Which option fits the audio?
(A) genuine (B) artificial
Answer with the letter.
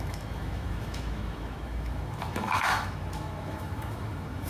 B